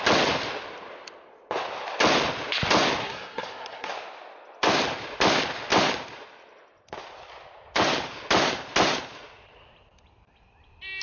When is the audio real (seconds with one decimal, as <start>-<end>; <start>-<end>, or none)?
0.0-3.0; 3.9-11.0